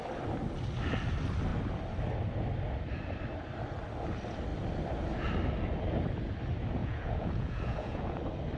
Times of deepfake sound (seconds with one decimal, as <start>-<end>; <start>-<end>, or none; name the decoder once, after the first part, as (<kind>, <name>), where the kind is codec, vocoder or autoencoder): 6.8-8.2 (vocoder, Vocos)